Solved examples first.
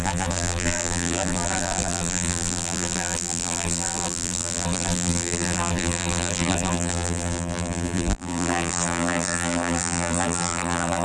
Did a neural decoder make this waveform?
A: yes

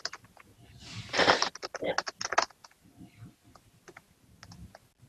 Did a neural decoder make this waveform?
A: no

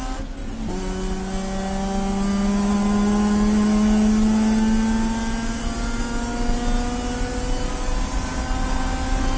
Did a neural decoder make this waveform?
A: no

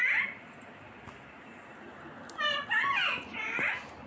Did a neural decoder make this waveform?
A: yes